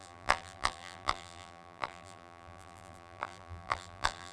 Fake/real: fake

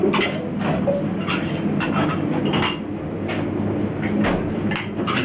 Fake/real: real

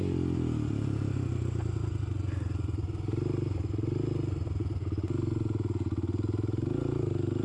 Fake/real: real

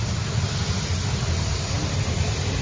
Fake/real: real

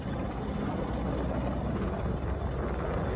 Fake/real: real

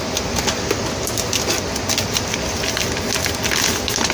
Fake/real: real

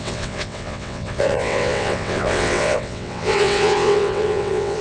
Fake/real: fake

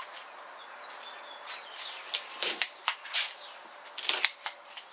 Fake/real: real